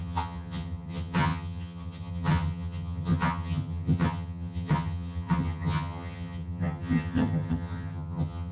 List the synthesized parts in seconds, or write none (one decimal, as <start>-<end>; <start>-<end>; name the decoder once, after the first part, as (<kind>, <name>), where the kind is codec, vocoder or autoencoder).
0.0-8.5 (vocoder, HiFi-GAN)